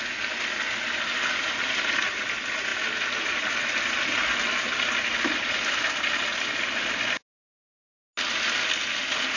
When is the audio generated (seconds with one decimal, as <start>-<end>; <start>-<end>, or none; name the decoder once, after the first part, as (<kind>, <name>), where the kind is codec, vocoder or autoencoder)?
none